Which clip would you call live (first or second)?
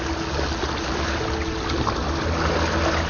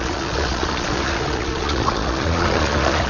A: first